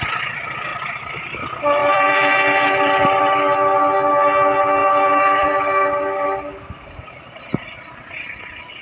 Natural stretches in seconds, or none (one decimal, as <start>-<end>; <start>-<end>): 0.0-0.7; 1.2-1.8; 3.2-4.8; 8.0-8.8